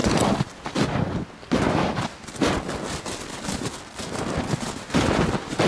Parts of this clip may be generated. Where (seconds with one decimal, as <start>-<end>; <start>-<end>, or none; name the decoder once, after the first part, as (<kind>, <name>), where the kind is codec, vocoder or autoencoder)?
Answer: none